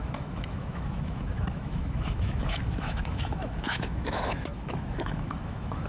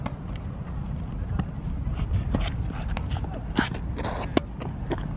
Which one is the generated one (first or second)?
first